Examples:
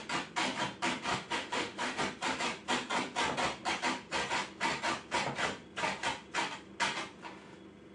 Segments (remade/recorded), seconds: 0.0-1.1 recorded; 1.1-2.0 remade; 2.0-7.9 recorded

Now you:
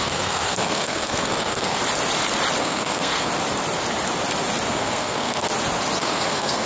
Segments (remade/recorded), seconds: 0.0-1.8 remade; 1.8-2.6 recorded; 2.6-3.3 remade; 3.3-4.7 recorded; 4.7-5.5 remade; 5.5-6.0 recorded; 6.0-6.7 remade

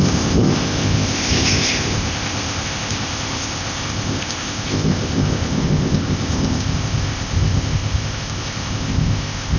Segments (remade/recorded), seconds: 0.0-9.6 remade